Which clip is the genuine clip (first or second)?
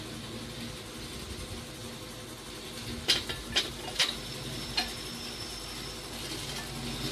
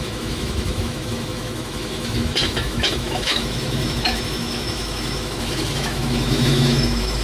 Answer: first